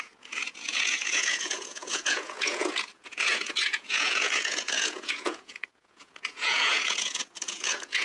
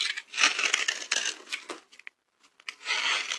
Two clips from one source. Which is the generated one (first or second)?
first